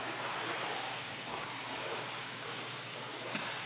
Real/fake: fake